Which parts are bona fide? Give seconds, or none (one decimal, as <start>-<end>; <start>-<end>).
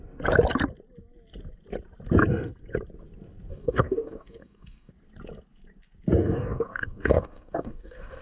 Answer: 0.0-3.5; 4.9-6.2